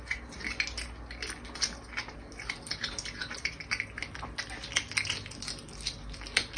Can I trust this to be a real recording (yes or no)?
yes